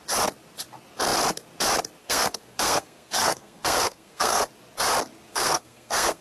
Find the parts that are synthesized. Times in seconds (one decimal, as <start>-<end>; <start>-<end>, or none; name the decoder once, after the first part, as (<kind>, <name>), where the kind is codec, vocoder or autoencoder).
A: 2.0-4.4 (codec, SNAC); 5.3-6.2